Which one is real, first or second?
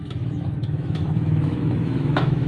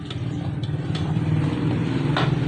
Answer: second